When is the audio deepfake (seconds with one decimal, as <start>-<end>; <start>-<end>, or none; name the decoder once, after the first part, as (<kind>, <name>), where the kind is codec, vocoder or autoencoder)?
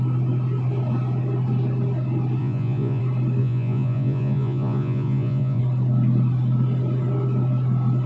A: 2.4-3.0 (vocoder, Vocos); 3.4-5.6